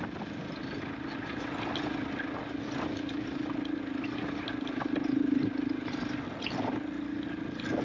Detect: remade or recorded recorded